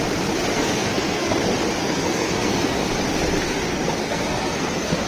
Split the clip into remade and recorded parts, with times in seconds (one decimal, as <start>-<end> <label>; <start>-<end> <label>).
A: 0.0-0.5 recorded; 0.5-1.3 remade; 1.3-1.8 recorded; 1.8-2.9 remade; 2.9-3.7 recorded; 3.7-5.1 remade